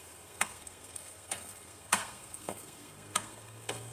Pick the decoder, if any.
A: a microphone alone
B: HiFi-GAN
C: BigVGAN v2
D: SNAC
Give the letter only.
D